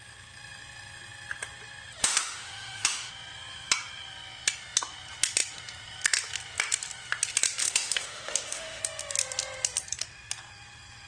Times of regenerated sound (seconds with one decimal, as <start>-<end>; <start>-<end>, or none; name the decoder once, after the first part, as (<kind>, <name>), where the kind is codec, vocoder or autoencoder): 2.0-3.1 (autoencoder, DAC-VAE); 7.6-8.8

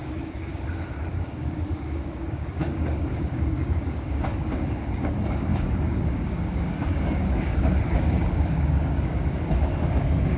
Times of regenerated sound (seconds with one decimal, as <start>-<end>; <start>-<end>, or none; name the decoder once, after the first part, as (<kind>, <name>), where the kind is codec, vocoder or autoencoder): 0.0-0.5 (codec, DAC); 1.1-10.4

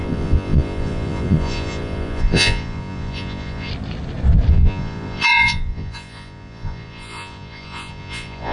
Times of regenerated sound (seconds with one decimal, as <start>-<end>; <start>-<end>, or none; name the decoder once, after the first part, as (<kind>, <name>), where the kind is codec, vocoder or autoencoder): 0.0-3.7 (vocoder, Vocos); 4.5-8.5

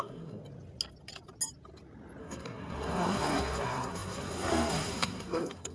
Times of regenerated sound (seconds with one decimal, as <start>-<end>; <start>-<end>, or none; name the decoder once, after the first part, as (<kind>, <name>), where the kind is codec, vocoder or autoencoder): 0.0-0.4 (codec, SNAC); 2.2-5.7

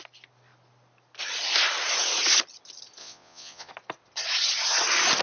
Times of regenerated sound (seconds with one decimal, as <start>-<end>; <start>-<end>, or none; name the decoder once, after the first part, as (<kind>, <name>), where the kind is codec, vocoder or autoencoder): 3.0-3.7 (vocoder, Vocos)

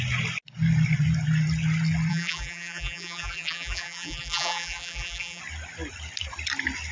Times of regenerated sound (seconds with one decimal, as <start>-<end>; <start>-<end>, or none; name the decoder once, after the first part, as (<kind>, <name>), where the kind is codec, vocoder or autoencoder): 2.1-5.4 (vocoder, BigVGAN v2)